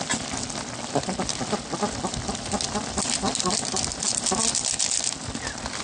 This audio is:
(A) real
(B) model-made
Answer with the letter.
A